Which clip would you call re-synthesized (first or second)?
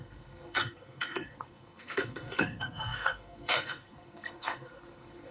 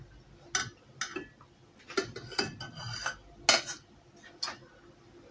first